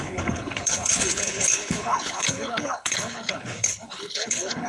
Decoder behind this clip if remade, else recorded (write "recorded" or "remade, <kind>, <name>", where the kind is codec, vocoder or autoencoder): remade, codec, HILCodec